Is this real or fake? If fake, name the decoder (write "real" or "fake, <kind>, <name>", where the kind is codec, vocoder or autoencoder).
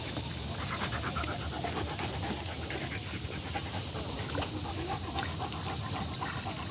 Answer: real